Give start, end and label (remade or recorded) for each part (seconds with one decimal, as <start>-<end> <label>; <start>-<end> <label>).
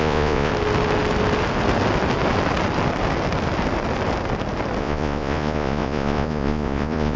0.0-0.5 remade; 0.5-4.8 recorded; 4.8-7.2 remade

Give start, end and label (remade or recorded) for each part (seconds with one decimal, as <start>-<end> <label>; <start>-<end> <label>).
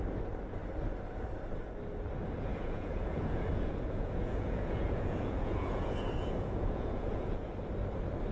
0.0-2.5 recorded; 2.5-7.5 remade; 7.5-8.3 recorded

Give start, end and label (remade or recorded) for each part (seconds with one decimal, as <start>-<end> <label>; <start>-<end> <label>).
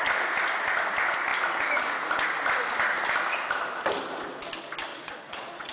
0.0-4.9 recorded; 4.9-5.7 remade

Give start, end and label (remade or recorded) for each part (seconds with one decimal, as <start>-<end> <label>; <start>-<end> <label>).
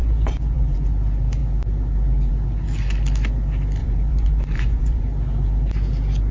0.0-0.9 remade; 0.9-3.8 recorded; 3.8-5.0 remade; 5.0-6.3 recorded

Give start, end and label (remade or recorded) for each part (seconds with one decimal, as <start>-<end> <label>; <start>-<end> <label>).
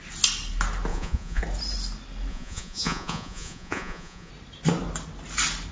0.0-0.9 recorded; 0.9-1.4 remade; 1.4-2.3 recorded; 2.3-4.3 remade; 4.3-5.7 recorded